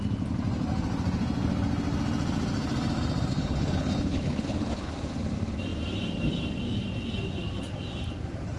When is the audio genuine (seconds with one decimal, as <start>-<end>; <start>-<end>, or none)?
0.0-3.3; 4.9-8.6